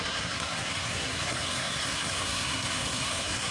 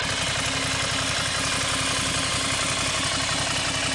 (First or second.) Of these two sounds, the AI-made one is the first